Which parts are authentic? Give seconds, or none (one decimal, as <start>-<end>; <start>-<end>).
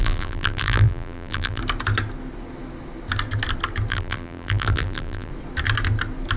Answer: 1.6-3.9; 5.3-6.4